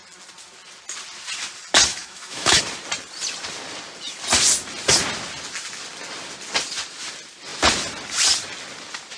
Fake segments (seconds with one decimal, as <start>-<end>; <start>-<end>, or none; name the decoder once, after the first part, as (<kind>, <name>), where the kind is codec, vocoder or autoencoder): 1.9-2.6 (autoencoder, DAC-VAE)